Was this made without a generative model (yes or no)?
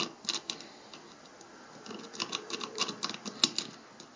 yes